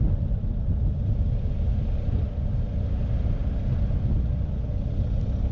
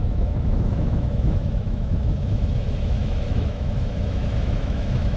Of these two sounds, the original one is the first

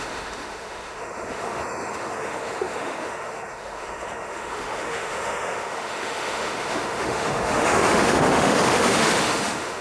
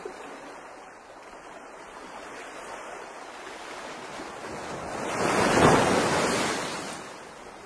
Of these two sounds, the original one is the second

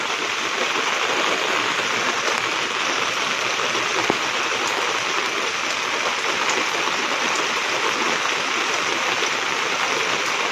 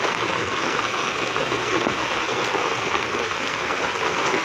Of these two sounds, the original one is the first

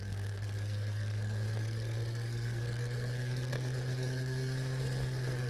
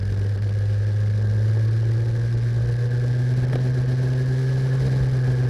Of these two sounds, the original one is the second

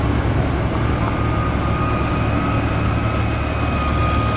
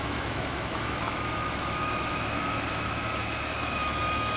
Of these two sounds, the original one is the first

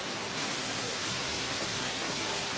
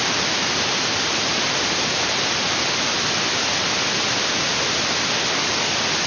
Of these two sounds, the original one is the second